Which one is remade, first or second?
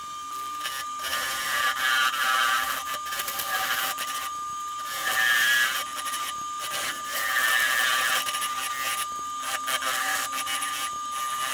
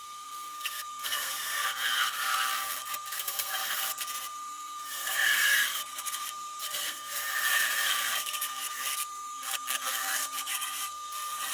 second